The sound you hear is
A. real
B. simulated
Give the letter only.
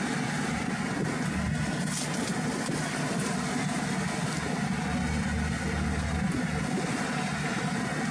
A